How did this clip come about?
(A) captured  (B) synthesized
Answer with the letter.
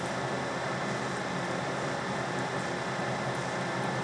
A